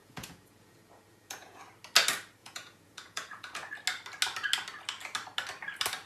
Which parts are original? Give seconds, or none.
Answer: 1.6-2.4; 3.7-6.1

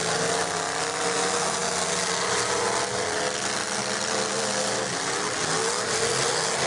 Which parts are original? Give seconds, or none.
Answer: 0.0-6.7